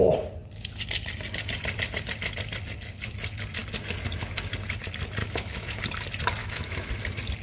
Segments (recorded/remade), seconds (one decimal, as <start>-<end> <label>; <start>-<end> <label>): 0.0-5.2 recorded; 5.2-5.8 remade; 5.8-6.4 recorded; 6.4-6.9 remade; 6.9-7.4 recorded